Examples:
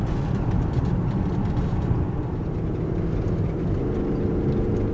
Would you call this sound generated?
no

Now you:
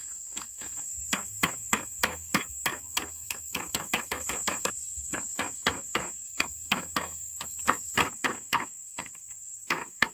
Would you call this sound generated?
yes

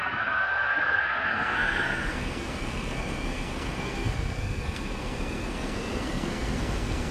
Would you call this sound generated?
yes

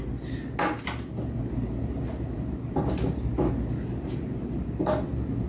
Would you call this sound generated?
no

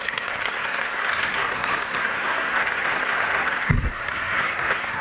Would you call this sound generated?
yes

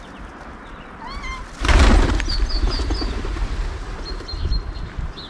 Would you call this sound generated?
no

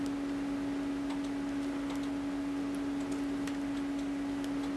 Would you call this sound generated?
no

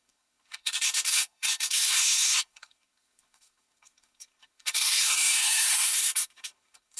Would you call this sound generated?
yes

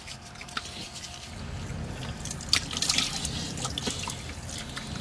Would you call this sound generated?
no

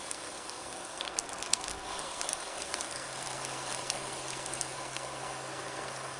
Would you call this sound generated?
yes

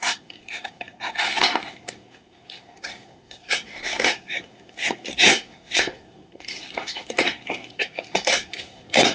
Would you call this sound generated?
yes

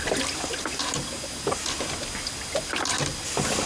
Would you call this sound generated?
no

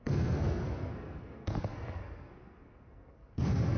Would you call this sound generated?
yes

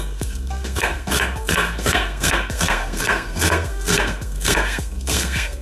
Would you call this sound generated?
yes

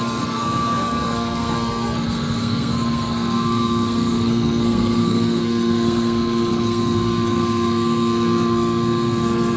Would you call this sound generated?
yes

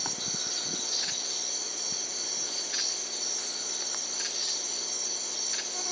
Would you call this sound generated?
no